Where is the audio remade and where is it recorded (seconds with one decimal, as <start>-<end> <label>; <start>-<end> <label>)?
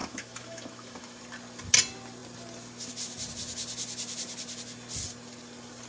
0.0-1.2 remade; 1.2-5.9 recorded